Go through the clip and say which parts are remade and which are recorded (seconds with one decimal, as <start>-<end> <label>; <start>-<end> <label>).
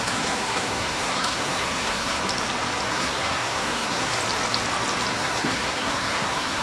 0.0-2.2 remade; 2.2-2.9 recorded; 2.9-4.2 remade; 4.2-5.1 recorded; 5.1-6.6 remade